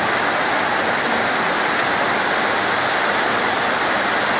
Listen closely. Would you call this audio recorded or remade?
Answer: recorded